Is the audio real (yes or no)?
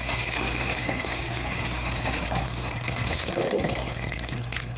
no